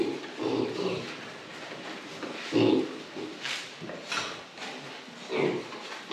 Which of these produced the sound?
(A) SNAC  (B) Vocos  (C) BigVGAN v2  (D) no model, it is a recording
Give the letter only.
D